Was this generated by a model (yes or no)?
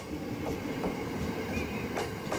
no